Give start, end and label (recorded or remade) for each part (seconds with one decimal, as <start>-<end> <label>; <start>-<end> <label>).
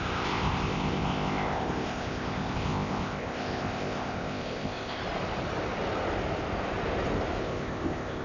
0.0-5.0 remade; 5.0-7.4 recorded; 7.4-8.2 remade